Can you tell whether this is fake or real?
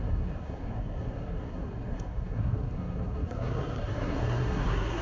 fake